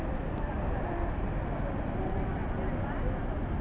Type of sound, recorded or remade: recorded